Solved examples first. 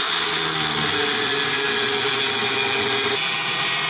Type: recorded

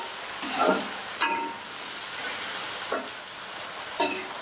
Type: recorded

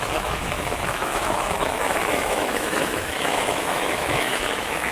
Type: remade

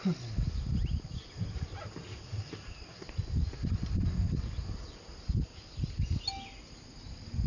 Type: recorded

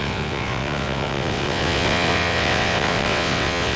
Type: remade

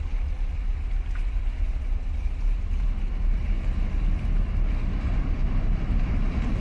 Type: recorded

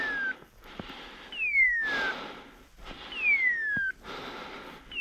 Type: recorded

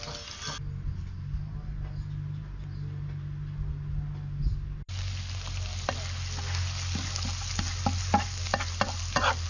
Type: recorded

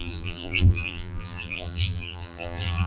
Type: remade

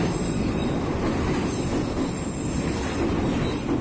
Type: recorded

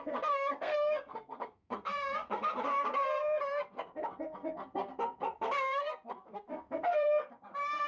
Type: remade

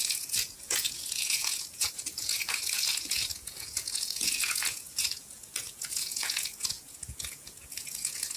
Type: remade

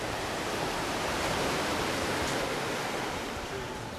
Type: remade